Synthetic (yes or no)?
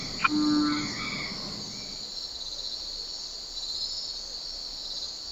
no